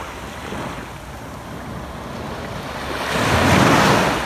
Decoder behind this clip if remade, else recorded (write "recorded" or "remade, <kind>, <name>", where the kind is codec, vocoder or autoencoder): recorded